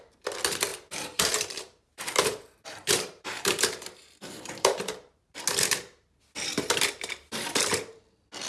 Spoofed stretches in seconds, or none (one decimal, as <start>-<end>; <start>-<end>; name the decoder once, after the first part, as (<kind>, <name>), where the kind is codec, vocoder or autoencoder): 0.7-5.4 (vocoder, BigVGAN v2)

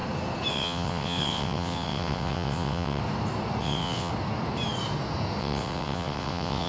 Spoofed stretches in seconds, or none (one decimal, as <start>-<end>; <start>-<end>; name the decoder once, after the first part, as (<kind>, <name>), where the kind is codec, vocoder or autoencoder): 0.5-3.0 (vocoder, WaveNeXt); 3.6-4.1; 5.4-6.7

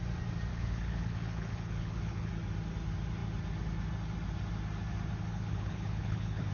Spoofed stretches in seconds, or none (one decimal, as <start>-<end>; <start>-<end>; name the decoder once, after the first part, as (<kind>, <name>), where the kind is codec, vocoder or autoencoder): 0.5-2.3 (codec, HILCodec); 5.3-6.5

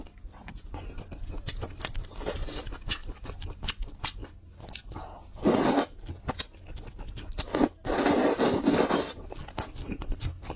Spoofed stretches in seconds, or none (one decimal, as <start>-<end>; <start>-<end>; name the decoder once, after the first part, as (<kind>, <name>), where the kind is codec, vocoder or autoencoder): 0.4-1.3 (vocoder, BigVGAN v2); 3.0-3.6

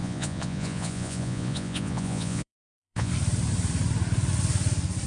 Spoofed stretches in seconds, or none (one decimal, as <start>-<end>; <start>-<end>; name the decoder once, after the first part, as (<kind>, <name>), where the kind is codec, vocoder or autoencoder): 0.0-3.1 (vocoder, Vocos)

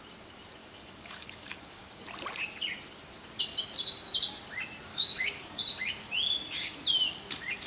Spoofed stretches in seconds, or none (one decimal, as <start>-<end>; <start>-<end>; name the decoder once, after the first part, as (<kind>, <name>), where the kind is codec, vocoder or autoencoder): 0.6-1.9 (codec, DAC); 4.9-5.6